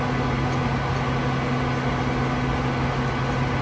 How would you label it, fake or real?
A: real